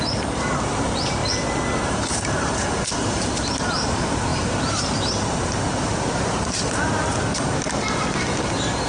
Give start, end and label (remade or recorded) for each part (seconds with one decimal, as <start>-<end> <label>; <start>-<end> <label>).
0.0-1.2 remade; 1.2-1.8 recorded; 1.8-7.0 remade; 7.0-8.0 recorded; 8.0-8.9 remade